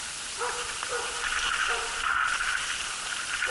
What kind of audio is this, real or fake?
real